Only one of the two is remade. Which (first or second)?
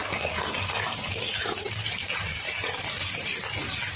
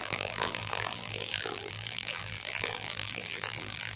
second